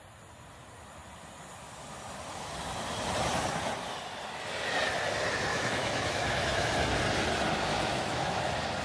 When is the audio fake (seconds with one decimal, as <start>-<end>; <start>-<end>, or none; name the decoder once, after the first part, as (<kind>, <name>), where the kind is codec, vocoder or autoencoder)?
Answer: 5.5-7.0 (autoencoder, DAC-VAE); 7.7-8.4